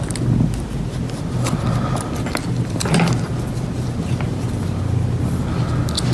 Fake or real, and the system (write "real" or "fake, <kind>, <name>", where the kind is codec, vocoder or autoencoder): real